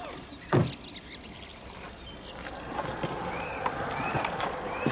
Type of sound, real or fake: real